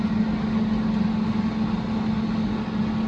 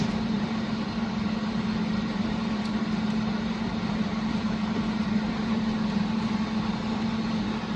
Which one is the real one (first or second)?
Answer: first